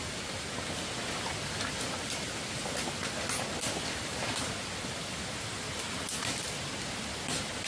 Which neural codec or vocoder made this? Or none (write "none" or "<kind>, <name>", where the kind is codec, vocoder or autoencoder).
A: none